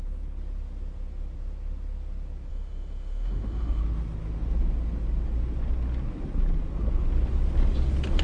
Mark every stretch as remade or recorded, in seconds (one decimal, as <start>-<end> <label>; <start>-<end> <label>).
0.0-2.5 recorded; 2.5-3.8 remade; 3.8-8.2 recorded